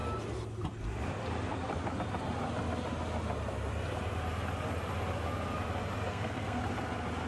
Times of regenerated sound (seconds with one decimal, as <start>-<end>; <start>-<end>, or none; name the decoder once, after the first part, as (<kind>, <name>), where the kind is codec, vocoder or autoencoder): 6.1-6.6 (codec, SNAC)